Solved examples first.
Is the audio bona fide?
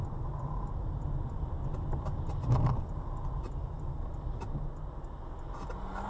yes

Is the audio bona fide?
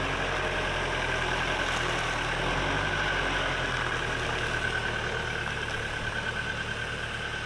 yes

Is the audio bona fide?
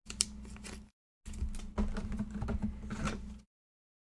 yes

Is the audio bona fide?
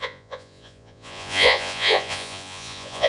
no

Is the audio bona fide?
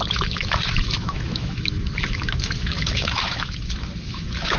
no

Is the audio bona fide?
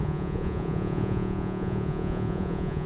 no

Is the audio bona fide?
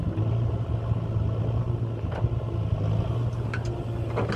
yes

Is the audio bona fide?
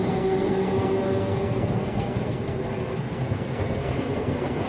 no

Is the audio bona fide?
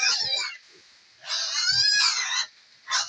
yes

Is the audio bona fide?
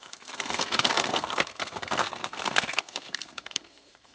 no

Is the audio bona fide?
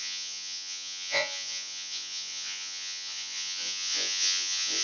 no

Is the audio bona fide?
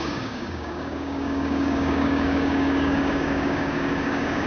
no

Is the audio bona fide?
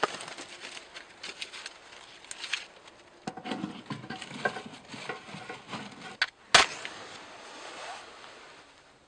yes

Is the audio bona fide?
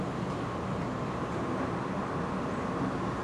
yes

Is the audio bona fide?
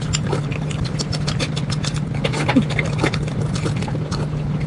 yes